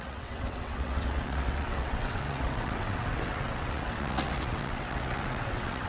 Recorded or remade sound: remade